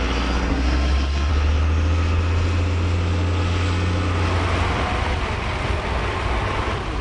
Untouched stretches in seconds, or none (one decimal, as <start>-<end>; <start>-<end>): 0.0-0.5; 1.3-7.0